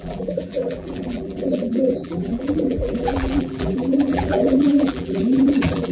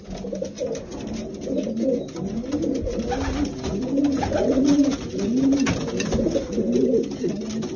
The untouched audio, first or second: second